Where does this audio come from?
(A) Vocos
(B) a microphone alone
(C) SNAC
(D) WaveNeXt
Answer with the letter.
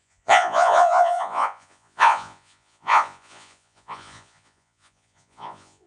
A